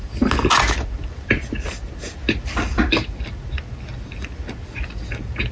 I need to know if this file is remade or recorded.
recorded